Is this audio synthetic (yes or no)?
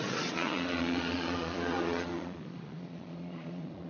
yes